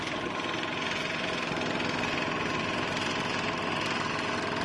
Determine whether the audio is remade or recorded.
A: recorded